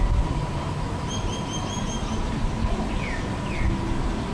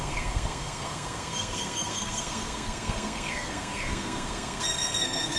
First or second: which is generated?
second